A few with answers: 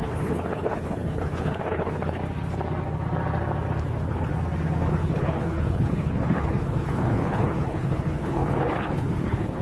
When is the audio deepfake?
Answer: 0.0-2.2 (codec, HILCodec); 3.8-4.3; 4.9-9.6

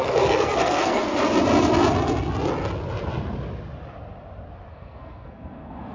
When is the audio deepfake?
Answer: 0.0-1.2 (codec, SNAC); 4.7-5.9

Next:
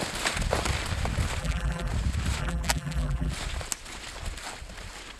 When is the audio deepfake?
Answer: 1.4-1.9 (vocoder, BigVGAN v2); 2.4-3.3